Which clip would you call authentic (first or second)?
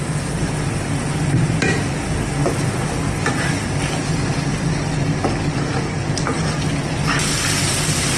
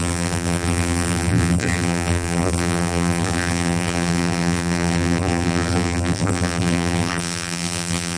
first